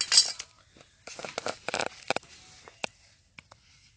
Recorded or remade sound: recorded